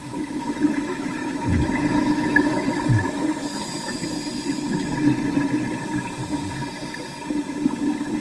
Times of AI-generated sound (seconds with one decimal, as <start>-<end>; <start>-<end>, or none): 0.0-4.9